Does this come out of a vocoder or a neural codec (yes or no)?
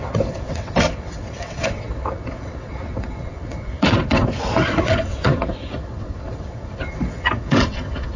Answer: yes